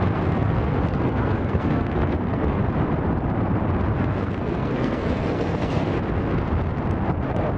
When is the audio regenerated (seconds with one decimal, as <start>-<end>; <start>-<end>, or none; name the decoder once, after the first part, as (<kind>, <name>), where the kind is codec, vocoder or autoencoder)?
0.0-2.6 (codec, SNAC); 4.0-5.9